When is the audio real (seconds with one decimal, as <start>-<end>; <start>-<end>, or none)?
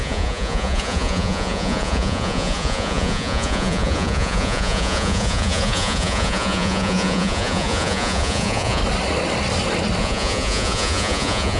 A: 8.8-10.0